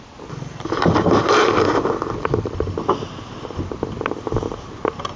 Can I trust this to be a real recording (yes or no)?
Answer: yes